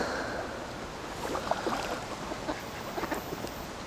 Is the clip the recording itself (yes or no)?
yes